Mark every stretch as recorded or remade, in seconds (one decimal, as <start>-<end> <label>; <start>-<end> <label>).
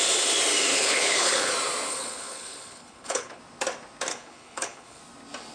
0.0-0.7 recorded; 0.7-1.5 remade; 1.5-1.9 recorded; 1.9-3.4 remade; 3.4-4.1 recorded; 4.1-5.0 remade; 5.0-5.5 recorded